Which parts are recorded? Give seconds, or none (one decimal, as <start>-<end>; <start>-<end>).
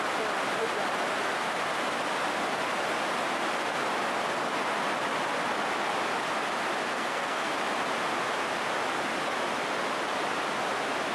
0.0-6.9; 7.5-11.1